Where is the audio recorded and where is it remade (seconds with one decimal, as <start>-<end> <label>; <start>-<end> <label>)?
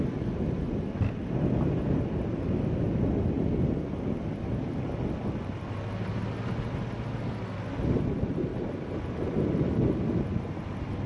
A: 0.0-8.5 recorded; 8.5-9.0 remade; 9.0-11.1 recorded